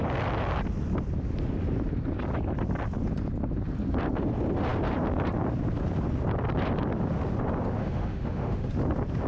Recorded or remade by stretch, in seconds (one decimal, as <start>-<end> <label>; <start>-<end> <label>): 0.0-7.8 recorded; 7.8-8.7 remade; 8.7-9.3 recorded